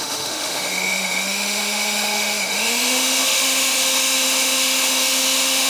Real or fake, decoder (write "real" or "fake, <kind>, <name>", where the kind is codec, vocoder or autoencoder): fake, autoencoder, DAC-VAE